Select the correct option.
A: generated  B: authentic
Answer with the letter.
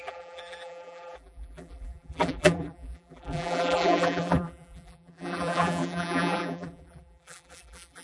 A